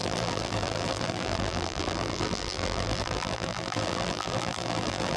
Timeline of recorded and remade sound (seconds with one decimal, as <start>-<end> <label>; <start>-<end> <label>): 0.0-5.2 remade